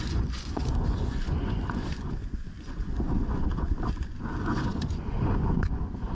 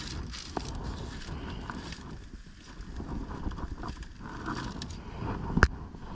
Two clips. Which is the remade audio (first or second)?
first